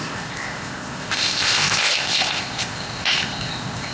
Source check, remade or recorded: remade